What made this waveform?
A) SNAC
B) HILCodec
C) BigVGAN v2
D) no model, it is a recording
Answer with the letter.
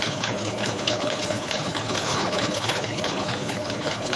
B